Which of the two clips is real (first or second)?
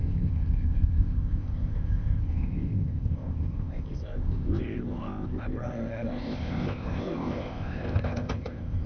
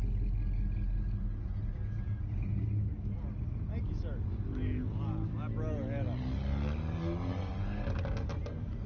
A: second